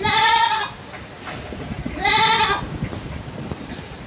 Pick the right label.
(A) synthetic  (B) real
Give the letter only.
B